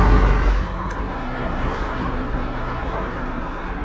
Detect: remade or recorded remade